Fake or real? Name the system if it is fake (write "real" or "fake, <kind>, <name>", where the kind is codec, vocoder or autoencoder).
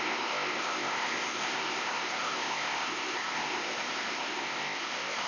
fake, codec, ZipCodec